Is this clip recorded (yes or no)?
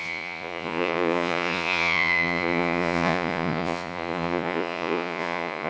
no